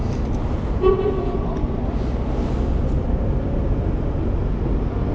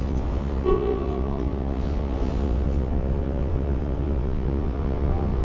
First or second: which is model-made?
second